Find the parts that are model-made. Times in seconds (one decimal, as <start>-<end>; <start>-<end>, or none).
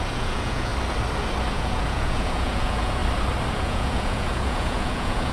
0.0-0.7; 1.5-3.0; 3.5-5.3